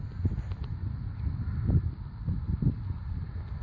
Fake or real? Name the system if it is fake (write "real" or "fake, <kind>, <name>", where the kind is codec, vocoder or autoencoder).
real